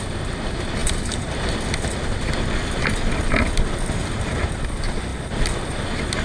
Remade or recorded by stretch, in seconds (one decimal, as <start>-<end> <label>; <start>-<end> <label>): 0.0-4.0 recorded; 4.0-4.6 remade; 4.6-5.1 recorded; 5.1-5.8 remade; 5.8-6.2 recorded